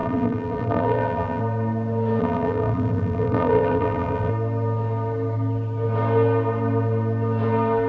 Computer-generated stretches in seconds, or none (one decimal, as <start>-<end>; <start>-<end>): 0.0-1.4; 2.2-4.3